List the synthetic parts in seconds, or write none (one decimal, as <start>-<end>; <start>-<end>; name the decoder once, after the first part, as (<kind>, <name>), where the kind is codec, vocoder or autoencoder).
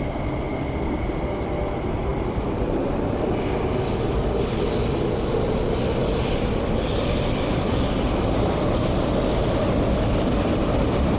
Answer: 2.1-3.7 (vocoder, BigVGAN v2); 6.0-11.2